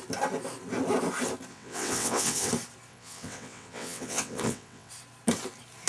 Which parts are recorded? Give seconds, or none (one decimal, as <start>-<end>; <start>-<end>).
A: 0.0-1.5; 2.5-2.9; 4.9-5.9